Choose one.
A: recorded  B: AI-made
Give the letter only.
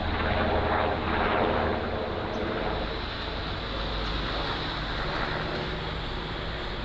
A